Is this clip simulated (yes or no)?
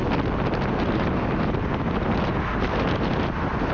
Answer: no